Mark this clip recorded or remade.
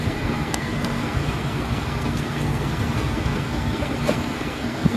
remade